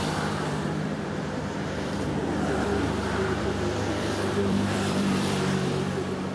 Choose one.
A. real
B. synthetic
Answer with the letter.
B